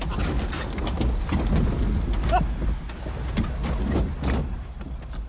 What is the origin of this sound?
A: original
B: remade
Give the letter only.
A